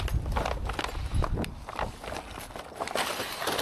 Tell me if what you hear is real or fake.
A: real